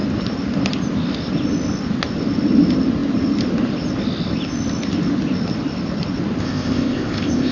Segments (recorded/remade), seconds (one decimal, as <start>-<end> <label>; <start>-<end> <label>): 0.0-6.4 recorded; 6.4-7.5 remade